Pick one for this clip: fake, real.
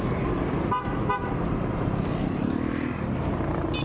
real